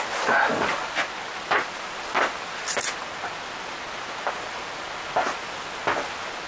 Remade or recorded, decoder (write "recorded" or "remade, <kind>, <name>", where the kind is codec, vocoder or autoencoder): recorded